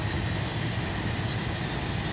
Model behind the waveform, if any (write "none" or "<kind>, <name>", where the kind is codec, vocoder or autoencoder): none